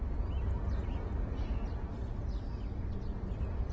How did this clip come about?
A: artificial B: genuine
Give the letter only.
B